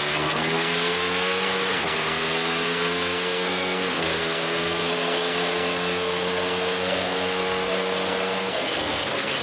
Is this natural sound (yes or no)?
no